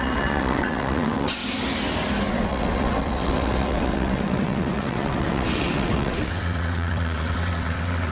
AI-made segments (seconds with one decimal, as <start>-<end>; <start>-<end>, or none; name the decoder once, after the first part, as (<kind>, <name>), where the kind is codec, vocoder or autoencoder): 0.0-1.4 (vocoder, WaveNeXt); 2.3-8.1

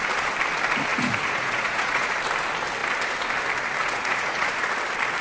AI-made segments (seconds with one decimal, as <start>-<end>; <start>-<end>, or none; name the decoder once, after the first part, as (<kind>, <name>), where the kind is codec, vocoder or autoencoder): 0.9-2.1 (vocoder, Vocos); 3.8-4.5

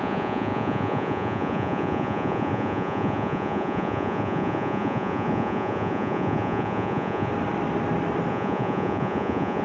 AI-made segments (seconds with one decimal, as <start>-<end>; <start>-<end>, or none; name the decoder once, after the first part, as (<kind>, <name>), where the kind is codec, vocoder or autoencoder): 0.0-7.3 (vocoder, Vocos); 8.3-9.6

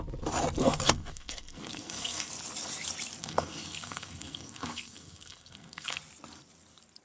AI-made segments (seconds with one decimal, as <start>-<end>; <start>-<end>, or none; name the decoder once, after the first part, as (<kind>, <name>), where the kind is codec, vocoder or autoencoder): 0.6-2.3 (codec, SNAC); 3.2-6.0

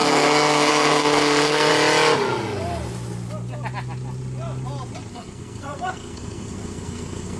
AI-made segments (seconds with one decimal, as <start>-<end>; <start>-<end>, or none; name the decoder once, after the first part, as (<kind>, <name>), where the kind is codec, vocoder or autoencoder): 0.0-1.7 (codec, SNAC); 5.1-7.4